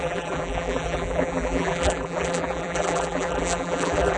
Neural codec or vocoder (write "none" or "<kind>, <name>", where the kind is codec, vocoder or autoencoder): vocoder, BigVGAN v2